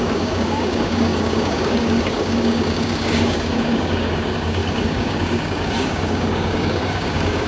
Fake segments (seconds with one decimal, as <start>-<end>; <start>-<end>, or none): 0.0-7.5